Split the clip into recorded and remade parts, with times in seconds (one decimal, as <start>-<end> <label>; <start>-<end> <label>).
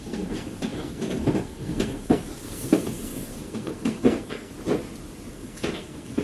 0.0-4.5 remade; 4.5-5.3 recorded; 5.3-6.2 remade